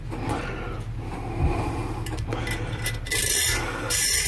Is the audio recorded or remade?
recorded